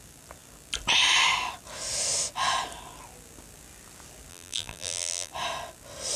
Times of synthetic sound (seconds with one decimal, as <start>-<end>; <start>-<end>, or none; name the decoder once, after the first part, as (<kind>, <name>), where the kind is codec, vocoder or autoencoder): 4.3-5.3 (vocoder, BigVGAN v2)